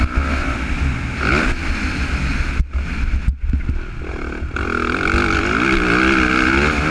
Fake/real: real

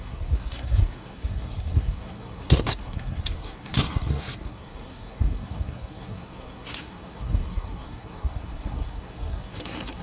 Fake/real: fake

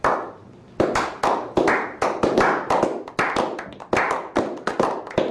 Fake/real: real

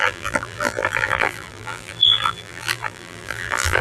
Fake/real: fake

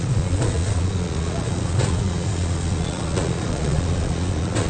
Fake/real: fake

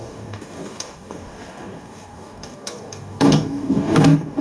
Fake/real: fake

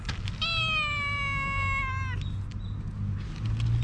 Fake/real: real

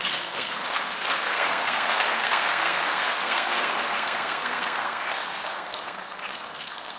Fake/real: fake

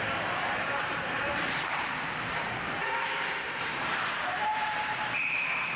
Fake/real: fake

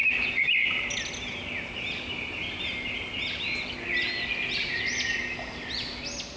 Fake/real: real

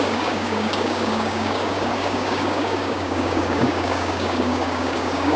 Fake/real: fake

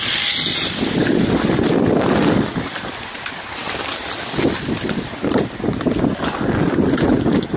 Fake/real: real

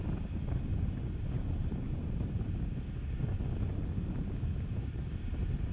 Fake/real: real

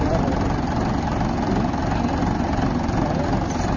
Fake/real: real